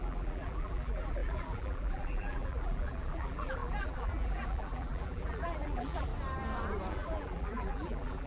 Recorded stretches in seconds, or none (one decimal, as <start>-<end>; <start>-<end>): 6.1-6.9